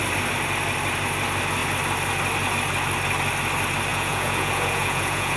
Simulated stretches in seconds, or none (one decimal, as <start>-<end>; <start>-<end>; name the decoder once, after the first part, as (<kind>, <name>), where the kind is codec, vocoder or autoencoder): 3.9-5.4 (vocoder, Vocos)